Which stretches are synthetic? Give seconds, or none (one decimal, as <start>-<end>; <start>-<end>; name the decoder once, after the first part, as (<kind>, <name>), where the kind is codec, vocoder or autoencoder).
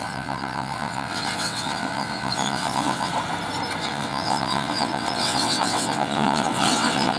0.0-3.1 (vocoder, WaveNeXt); 3.8-7.2